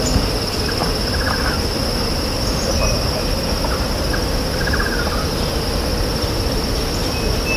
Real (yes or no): yes